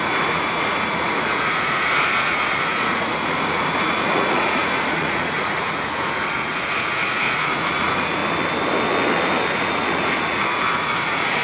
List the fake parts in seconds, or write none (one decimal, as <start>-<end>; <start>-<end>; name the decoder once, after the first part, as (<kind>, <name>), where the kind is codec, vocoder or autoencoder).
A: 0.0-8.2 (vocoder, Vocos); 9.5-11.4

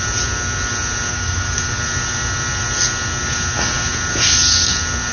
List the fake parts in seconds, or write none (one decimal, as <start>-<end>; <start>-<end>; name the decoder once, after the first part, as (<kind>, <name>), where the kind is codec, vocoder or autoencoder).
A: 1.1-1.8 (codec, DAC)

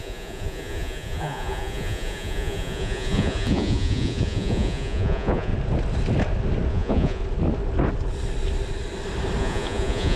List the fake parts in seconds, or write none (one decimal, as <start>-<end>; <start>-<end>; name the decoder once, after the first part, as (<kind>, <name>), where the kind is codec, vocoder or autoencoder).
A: 0.0-5.5 (vocoder, Vocos); 6.7-7.2; 9.4-10.2